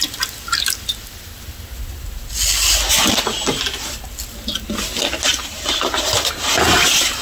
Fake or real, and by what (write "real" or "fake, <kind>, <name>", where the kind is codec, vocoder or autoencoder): real